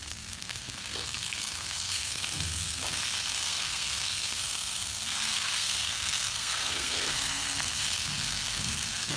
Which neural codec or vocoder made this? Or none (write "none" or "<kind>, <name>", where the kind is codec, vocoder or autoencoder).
codec, SNAC